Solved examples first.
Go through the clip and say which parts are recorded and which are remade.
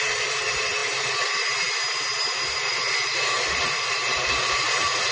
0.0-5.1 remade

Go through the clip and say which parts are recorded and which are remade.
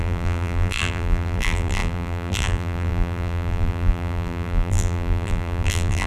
0.0-6.1 remade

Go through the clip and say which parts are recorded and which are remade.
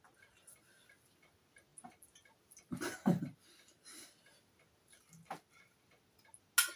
0.0-6.8 recorded